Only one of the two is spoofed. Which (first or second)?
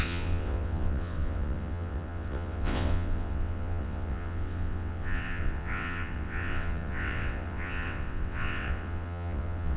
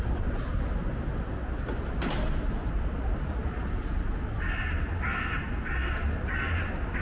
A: first